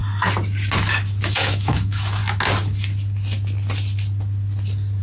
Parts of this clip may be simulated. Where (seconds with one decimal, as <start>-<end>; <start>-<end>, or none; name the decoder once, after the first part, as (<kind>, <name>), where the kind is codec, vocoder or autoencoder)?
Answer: 1.2-2.2 (autoencoder, DAC-VAE)